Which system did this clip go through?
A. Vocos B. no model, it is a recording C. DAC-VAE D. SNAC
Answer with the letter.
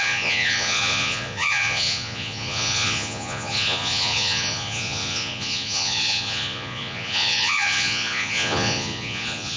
A